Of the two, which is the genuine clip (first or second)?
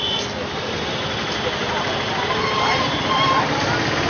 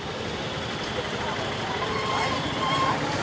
first